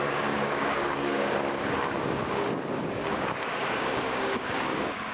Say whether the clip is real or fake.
fake